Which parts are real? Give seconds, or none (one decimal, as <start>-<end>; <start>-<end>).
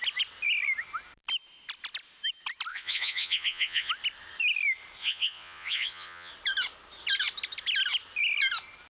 0.0-2.7; 3.9-5.0; 6.3-8.9